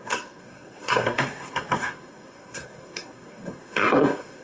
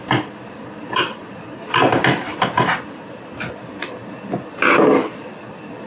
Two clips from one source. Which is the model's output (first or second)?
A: first